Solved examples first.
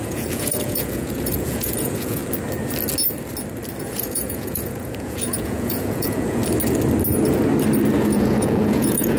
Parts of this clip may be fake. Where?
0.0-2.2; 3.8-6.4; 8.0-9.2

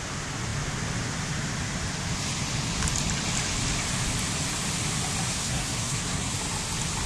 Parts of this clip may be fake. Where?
5.3-6.3

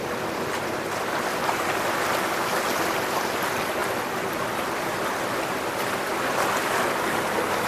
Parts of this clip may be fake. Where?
none

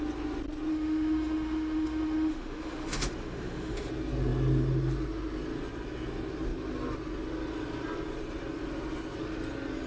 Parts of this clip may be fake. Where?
0.7-3.9

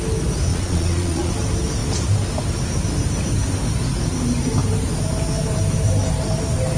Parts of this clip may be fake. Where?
0.5-1.3

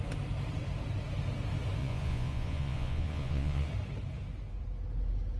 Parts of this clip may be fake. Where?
1.8-3.7

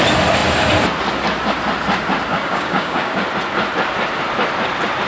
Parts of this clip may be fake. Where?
2.3-3.2